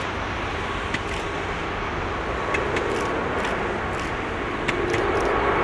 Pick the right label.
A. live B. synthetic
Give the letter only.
A